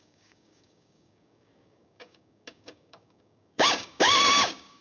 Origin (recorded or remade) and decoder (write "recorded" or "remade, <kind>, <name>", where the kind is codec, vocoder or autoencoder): remade, codec, DAC